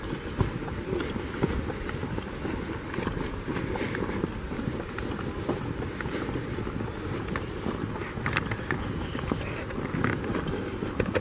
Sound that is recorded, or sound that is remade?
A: recorded